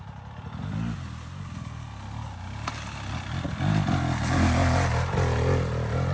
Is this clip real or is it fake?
real